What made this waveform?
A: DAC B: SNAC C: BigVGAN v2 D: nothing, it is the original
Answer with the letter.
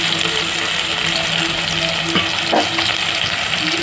D